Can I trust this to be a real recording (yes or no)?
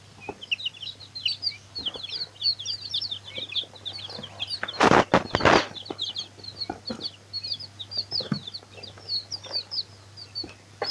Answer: yes